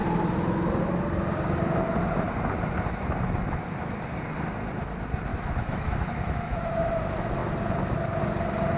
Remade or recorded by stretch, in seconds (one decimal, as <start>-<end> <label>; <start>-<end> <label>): 0.0-5.3 recorded; 5.3-6.9 remade; 6.9-8.8 recorded